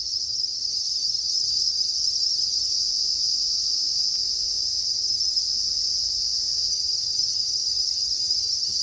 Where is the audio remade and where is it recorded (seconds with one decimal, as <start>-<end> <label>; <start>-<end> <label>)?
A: 0.0-2.7 remade; 2.7-4.9 recorded; 4.9-5.4 remade; 5.4-6.7 recorded; 6.7-8.8 remade